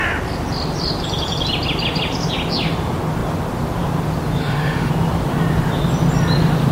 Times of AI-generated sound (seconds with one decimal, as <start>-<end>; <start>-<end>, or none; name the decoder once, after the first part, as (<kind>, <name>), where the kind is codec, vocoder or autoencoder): 4.4-4.9 (autoencoder, DAC-VAE)